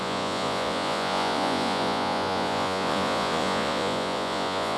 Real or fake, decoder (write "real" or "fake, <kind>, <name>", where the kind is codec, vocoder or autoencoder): fake, vocoder, Vocos